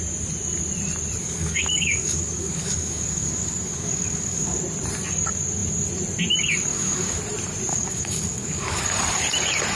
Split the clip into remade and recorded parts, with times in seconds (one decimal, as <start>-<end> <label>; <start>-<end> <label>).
0.0-1.2 recorded; 1.2-4.6 remade; 4.6-6.7 recorded; 6.7-7.2 remade; 7.2-7.7 recorded; 7.7-8.8 remade; 8.8-9.7 recorded